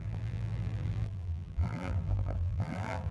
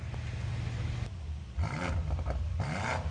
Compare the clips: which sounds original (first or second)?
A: second